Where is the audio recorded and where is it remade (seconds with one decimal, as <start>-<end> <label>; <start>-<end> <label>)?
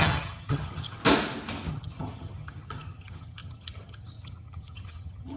0.0-1.0 remade; 1.0-1.7 recorded; 1.7-5.4 remade